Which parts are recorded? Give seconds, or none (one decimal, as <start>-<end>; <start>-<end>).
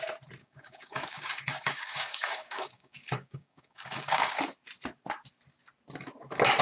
0.0-0.4; 4.4-6.6